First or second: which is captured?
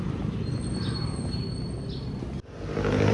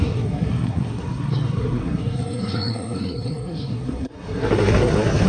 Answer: first